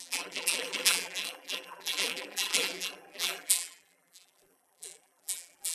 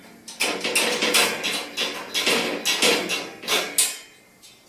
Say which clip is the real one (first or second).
second